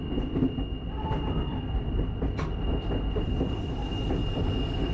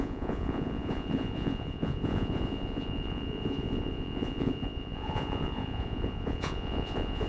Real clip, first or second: first